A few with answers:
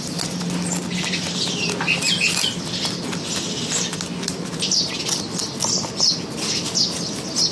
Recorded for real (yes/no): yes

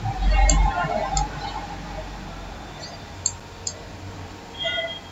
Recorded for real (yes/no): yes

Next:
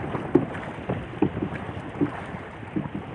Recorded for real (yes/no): yes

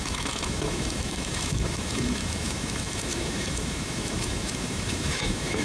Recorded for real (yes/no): no